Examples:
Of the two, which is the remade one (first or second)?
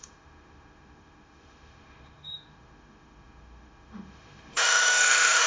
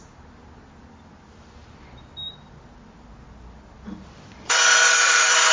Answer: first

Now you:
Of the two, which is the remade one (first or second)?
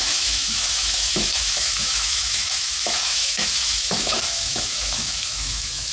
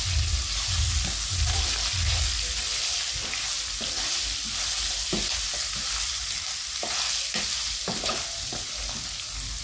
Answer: first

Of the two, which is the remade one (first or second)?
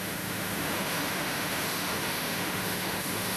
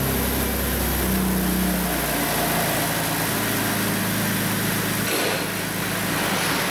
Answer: first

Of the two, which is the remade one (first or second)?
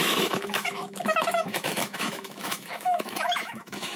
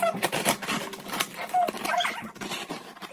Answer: first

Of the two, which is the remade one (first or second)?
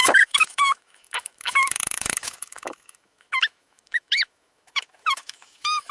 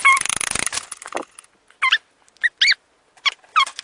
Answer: first